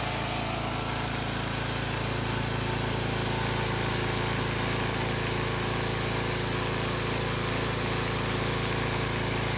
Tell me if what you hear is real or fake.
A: real